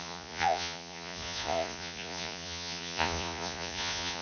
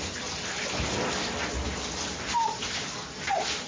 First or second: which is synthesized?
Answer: first